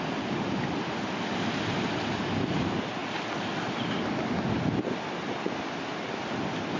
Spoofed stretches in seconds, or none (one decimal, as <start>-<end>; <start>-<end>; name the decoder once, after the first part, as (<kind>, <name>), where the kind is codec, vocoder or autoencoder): none